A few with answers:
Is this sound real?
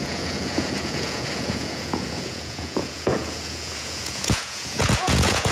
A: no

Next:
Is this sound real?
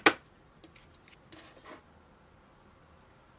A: yes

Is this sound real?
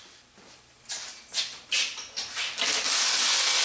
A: yes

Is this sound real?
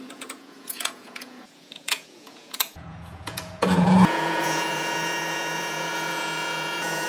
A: no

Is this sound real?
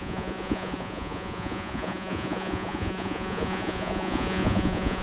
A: no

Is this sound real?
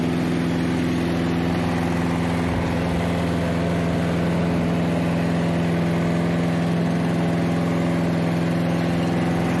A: yes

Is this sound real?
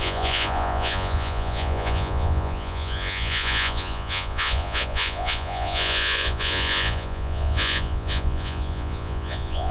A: no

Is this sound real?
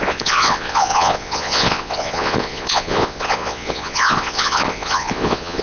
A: no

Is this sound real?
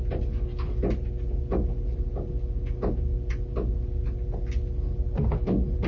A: yes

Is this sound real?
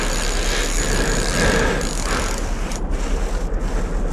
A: yes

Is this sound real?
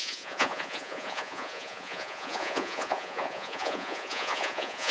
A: no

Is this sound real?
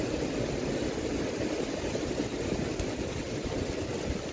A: yes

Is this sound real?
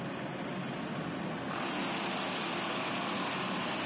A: yes